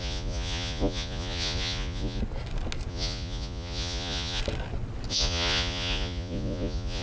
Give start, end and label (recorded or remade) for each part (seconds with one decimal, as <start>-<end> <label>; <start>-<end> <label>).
0.0-2.2 remade; 2.2-2.9 recorded; 2.9-4.4 remade; 4.4-5.1 recorded; 5.1-7.0 remade